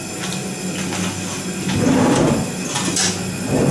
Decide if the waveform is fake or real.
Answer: real